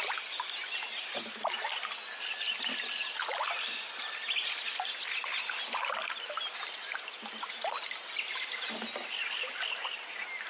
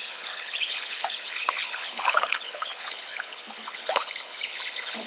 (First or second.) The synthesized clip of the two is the second